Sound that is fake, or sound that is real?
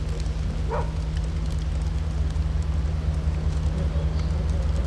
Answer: real